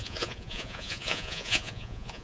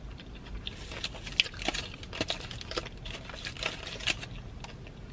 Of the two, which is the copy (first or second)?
first